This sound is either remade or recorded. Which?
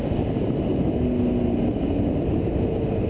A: recorded